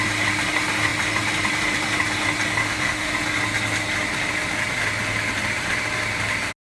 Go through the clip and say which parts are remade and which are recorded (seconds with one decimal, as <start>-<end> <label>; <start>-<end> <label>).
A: 0.0-2.6 recorded; 2.6-3.1 remade; 3.1-6.6 recorded